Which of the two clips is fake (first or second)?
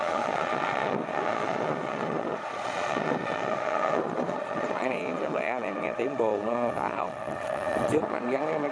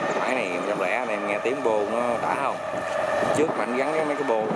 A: first